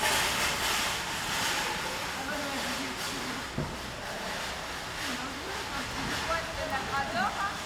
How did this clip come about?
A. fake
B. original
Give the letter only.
B